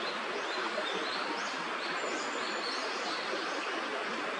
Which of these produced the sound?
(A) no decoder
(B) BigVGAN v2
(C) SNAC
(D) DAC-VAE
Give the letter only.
A